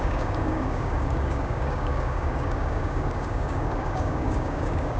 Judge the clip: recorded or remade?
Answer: remade